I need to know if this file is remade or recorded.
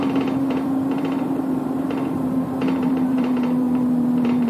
remade